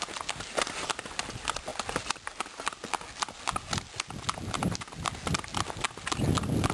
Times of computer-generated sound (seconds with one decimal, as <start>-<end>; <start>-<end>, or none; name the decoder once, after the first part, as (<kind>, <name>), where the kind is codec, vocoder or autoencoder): none